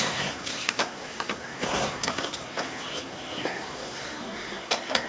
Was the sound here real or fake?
fake